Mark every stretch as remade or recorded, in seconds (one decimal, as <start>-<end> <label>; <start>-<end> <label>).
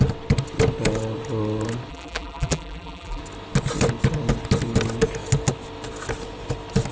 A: 0.0-1.9 recorded; 1.9-3.2 remade; 3.2-6.9 recorded